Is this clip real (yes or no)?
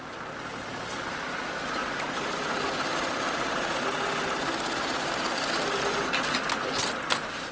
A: yes